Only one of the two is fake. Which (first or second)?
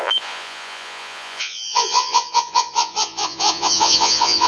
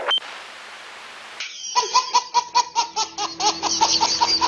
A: first